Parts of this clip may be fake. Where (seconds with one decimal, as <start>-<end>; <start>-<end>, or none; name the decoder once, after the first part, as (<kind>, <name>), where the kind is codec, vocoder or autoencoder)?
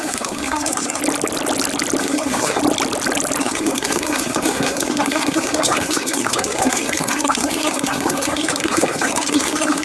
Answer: 0.0-1.0 (codec, SNAC); 2.0-2.6; 3.4-9.8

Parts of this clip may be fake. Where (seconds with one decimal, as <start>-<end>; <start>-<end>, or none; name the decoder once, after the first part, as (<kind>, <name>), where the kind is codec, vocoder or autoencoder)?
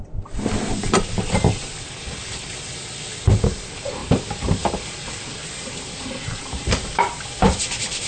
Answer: none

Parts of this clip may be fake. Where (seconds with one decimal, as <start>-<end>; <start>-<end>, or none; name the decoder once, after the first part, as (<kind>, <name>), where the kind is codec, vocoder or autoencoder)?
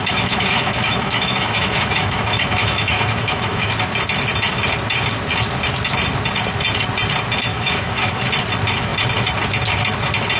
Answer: 0.0-3.7 (autoencoder, DAC-VAE); 7.5-8.3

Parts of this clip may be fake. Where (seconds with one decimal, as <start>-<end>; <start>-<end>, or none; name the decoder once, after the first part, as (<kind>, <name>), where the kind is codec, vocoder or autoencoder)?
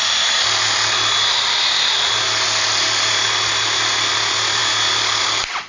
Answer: none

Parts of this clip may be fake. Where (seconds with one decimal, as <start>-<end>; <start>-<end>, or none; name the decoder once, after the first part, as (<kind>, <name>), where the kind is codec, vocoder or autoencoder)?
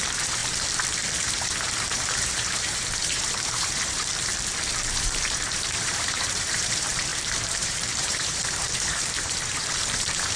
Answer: 0.0-0.4 (vocoder, BigVGAN v2); 1.2-4.1; 4.8-10.4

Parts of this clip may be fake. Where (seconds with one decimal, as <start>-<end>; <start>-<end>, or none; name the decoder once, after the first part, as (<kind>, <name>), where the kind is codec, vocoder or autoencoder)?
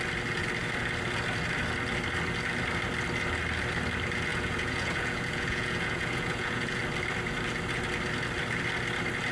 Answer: 4.3-6.8 (vocoder, Vocos)